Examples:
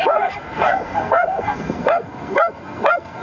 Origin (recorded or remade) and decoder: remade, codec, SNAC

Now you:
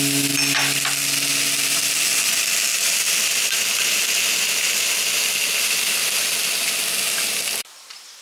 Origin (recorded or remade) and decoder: recorded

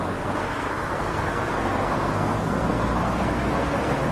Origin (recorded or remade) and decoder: remade, codec, SNAC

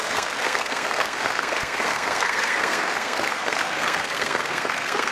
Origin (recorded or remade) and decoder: remade, codec, SNAC